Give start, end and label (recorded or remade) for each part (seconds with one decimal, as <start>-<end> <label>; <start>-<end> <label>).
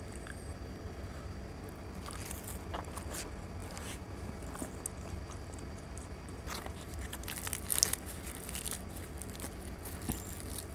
0.0-3.6 recorded; 3.6-4.4 remade; 4.4-10.7 recorded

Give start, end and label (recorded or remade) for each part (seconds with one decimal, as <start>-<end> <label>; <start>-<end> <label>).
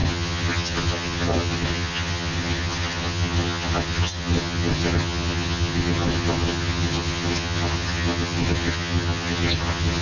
0.0-10.0 remade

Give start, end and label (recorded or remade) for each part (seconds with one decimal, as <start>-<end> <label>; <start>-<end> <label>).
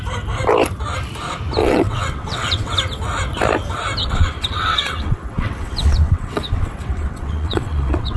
0.0-1.6 recorded; 1.6-2.7 remade; 2.7-4.0 recorded; 4.0-8.2 remade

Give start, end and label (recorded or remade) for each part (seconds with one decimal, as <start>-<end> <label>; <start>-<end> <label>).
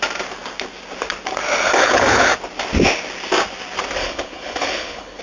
0.0-1.8 recorded; 1.8-2.3 remade; 2.3-4.0 recorded; 4.0-5.2 remade